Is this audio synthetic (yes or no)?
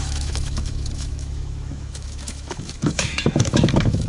yes